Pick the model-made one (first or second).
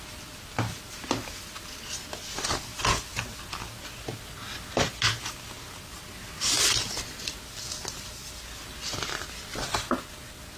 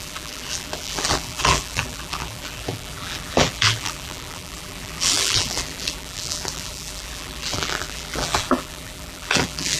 second